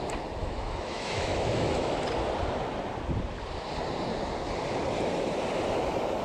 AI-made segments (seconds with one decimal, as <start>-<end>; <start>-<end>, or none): 0.4-2.0